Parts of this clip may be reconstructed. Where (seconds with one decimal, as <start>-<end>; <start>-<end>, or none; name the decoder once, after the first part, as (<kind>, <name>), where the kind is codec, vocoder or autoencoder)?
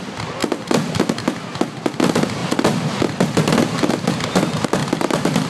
0.4-0.9 (vocoder, BigVGAN v2); 4.8-5.5